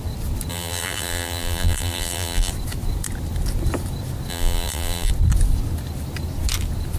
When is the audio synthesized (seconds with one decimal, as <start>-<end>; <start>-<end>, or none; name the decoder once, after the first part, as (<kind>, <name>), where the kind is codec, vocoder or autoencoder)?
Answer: 0.5-2.5 (vocoder, BigVGAN v2); 4.3-5.1